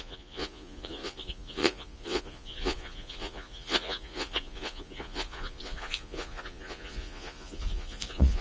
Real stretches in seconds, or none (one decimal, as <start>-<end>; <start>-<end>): none